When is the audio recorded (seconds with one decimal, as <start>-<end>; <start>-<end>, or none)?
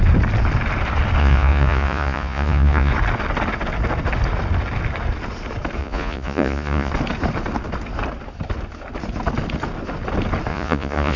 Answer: 0.0-1.2; 2.9-5.8; 6.9-10.5